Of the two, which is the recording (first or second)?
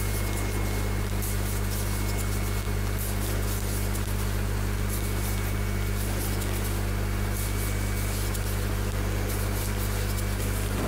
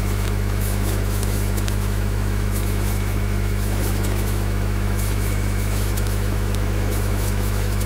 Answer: first